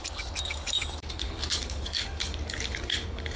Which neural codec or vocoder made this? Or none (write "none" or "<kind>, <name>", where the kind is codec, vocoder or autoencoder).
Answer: codec, DAC